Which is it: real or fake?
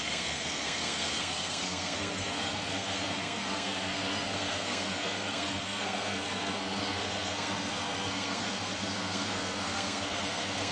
fake